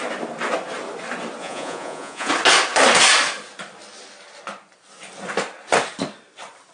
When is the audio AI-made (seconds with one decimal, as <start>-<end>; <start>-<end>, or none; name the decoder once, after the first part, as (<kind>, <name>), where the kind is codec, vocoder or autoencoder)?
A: 1.4-2.3 (vocoder, Vocos)